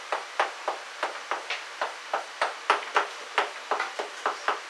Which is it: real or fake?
real